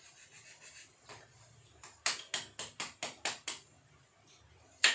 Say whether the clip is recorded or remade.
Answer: recorded